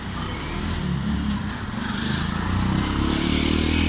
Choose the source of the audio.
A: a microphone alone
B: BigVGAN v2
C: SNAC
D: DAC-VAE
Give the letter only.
A